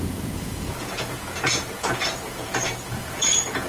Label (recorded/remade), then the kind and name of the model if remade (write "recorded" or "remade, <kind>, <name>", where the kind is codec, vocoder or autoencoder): remade, vocoder, Vocos